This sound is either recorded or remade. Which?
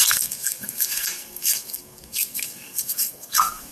remade